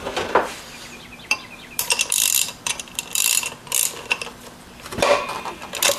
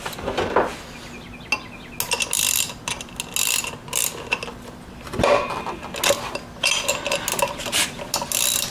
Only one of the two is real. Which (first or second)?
second